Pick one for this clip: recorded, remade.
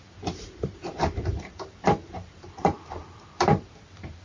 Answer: remade